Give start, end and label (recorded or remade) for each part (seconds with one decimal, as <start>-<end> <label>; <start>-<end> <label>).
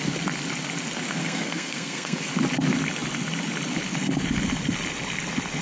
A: 0.0-1.2 recorded; 1.2-2.3 remade; 2.3-5.6 recorded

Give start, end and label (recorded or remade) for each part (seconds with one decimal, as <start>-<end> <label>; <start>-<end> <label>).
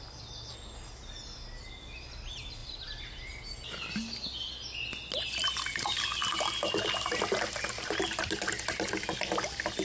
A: 0.0-2.6 recorded; 2.6-3.3 remade; 3.3-5.7 recorded; 5.7-6.3 remade; 6.3-9.8 recorded